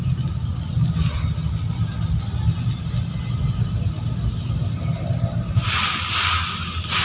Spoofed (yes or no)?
no